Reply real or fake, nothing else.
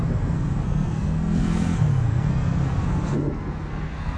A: fake